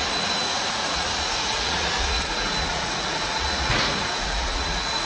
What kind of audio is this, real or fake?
fake